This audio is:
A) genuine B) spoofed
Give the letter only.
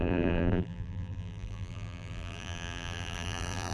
B